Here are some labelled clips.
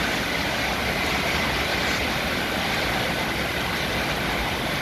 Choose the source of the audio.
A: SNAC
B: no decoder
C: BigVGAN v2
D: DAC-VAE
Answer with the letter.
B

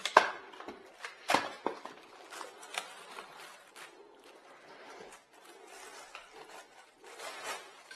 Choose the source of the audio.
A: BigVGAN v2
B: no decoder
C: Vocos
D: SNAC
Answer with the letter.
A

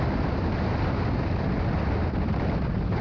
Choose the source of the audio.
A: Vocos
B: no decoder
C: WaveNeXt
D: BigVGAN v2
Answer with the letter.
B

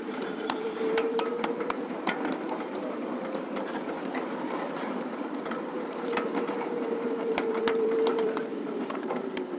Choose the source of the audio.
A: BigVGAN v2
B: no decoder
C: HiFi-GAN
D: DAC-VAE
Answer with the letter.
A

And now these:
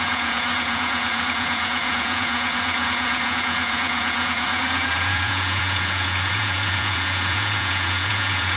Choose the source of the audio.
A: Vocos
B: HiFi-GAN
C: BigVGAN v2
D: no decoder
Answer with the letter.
A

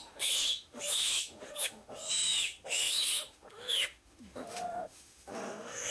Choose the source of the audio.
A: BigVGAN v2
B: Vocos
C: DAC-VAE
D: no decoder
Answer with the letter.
C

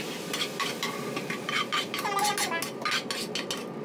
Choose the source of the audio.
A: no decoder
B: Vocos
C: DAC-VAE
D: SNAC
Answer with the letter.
A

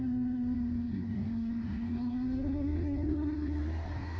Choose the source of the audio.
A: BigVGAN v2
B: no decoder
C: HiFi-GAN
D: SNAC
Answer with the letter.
D